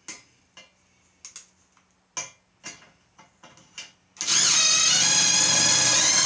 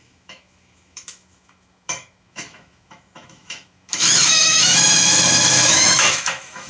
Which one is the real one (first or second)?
first